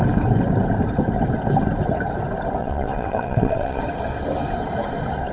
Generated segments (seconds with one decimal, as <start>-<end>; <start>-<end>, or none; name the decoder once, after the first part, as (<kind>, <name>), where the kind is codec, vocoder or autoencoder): 2.6-3.8 (vocoder, WaveNeXt)